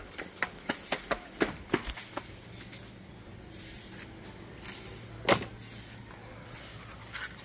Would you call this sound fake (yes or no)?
no